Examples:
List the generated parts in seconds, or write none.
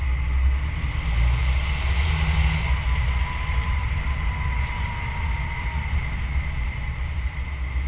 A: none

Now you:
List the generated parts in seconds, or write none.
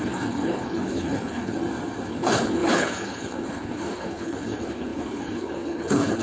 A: 0.0-1.6 (codec, HILCodec); 2.1-6.2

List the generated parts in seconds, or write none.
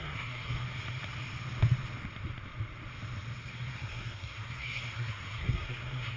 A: 0.0-0.6 (codec, SNAC); 3.7-6.2